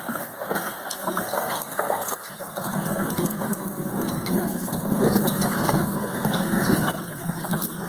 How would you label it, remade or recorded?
remade